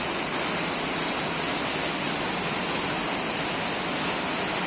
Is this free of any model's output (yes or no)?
yes